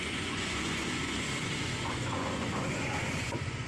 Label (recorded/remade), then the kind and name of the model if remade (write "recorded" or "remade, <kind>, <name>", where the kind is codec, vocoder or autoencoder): remade, vocoder, Vocos